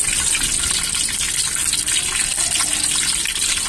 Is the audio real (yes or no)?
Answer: yes